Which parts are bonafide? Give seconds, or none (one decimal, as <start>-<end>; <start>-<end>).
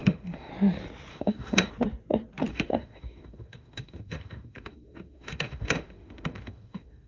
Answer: 0.5-1.1; 1.7-2.5